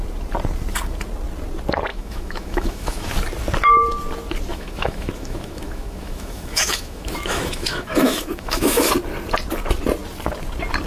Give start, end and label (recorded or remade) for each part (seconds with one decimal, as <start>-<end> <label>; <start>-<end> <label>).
0.0-1.9 recorded; 1.9-3.1 remade; 3.1-4.5 recorded; 4.5-8.9 remade; 8.9-10.9 recorded

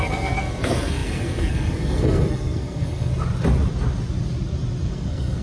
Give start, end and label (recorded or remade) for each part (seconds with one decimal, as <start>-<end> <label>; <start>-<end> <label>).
0.0-3.1 remade; 3.1-4.9 recorded; 4.9-5.4 remade

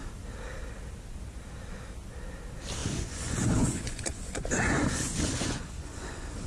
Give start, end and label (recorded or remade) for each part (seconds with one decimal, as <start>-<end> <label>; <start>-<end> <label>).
0.0-2.8 recorded; 2.8-6.5 remade

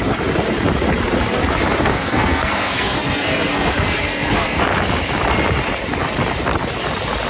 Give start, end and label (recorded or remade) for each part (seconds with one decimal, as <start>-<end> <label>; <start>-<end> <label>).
0.0-1.9 recorded; 1.9-4.6 remade; 4.6-7.3 recorded

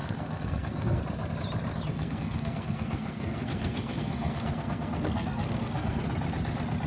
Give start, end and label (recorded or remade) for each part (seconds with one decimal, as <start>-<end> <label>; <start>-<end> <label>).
0.0-1.0 remade; 1.0-1.9 recorded; 1.9-6.0 remade; 6.0-6.9 recorded

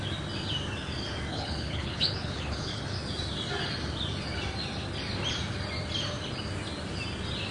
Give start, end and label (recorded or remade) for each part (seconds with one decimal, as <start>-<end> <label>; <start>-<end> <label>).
0.0-1.3 recorded; 1.3-2.8 remade; 2.8-7.5 recorded